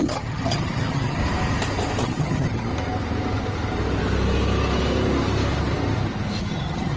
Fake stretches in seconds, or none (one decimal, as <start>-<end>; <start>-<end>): 0.0-1.2; 2.0-2.7; 6.4-7.0